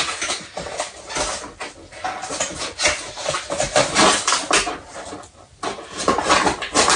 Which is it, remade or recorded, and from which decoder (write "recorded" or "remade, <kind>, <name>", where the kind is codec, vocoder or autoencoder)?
recorded